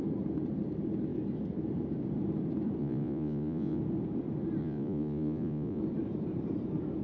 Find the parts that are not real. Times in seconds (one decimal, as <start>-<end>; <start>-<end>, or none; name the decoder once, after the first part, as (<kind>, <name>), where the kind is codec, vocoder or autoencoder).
2.8-3.8 (vocoder, Vocos); 4.6-5.8